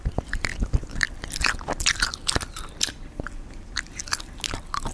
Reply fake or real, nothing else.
real